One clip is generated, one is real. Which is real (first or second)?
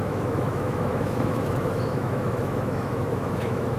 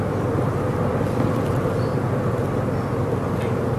second